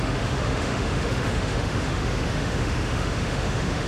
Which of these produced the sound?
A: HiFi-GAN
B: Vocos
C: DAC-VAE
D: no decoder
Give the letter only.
C